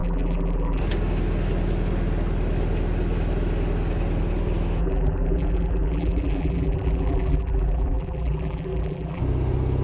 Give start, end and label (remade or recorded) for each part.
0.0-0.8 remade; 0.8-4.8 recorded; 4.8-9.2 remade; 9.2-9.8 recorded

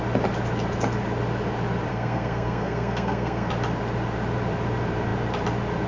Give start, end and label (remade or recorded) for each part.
0.0-1.9 recorded; 1.9-3.5 remade; 3.5-5.9 recorded

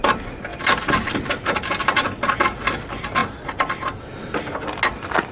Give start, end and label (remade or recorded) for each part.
0.0-3.2 recorded; 3.2-4.0 remade; 4.0-5.3 recorded